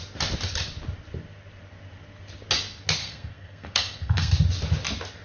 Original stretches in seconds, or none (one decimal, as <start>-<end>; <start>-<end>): 0.0-3.0; 4.3-5.2